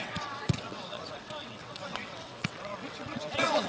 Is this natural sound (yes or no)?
no